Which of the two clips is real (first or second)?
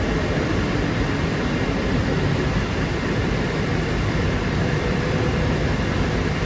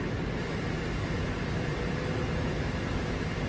second